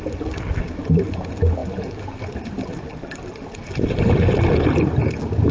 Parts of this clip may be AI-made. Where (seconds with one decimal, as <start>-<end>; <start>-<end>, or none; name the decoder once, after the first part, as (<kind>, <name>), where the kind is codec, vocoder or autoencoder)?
none